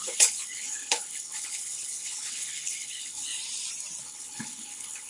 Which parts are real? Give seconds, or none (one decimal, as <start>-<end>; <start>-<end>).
3.3-4.0